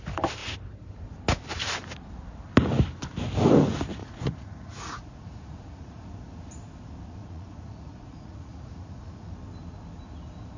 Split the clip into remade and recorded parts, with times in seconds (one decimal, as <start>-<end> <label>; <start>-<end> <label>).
0.0-4.0 recorded; 4.0-6.0 remade; 6.0-7.2 recorded; 7.2-9.3 remade; 9.3-10.6 recorded